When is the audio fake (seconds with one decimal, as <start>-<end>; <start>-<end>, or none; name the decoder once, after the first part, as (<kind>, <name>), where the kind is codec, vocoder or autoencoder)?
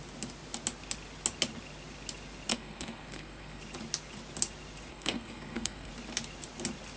2.5-3.6 (codec, SNAC); 4.9-5.9